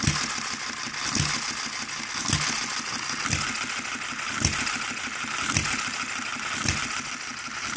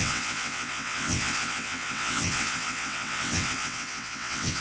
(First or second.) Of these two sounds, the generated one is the second